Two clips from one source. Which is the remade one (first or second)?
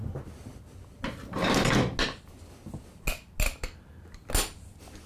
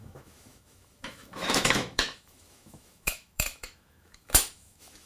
second